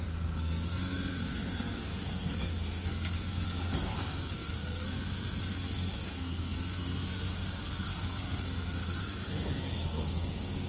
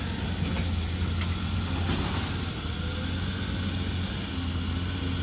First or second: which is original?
second